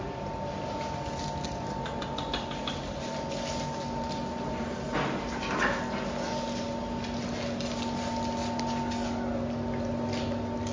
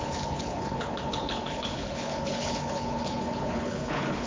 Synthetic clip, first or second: second